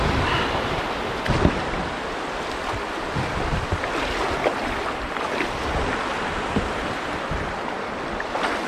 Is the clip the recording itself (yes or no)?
yes